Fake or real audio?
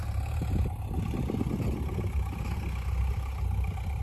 real